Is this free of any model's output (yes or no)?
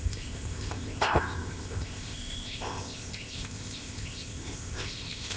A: no